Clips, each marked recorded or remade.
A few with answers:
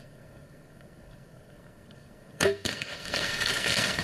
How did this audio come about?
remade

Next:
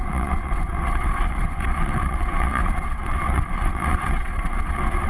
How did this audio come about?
remade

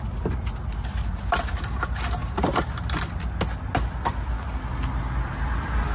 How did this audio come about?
recorded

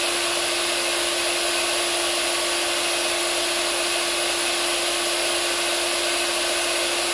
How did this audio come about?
recorded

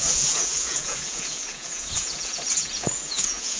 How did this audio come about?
remade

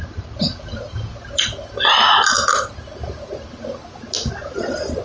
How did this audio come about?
recorded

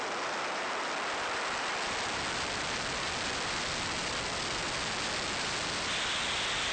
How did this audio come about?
recorded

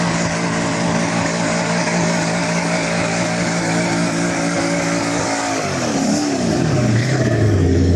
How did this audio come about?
remade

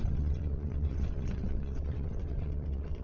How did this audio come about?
remade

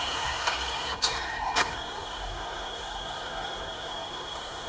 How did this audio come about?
remade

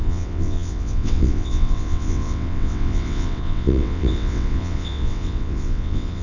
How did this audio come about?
remade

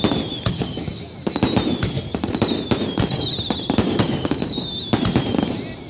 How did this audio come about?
recorded